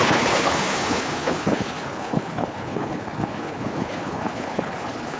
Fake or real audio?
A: fake